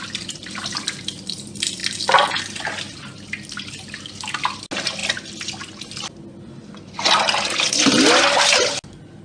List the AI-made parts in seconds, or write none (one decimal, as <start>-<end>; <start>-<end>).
none